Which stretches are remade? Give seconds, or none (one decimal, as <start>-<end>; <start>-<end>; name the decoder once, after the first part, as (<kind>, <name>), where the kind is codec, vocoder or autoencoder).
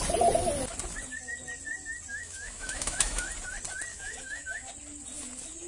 2.1-3.3 (autoencoder, DAC-VAE); 3.9-4.7